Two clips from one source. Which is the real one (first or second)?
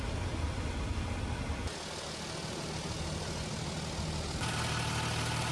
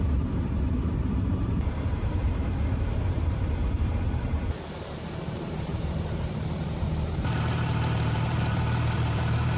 first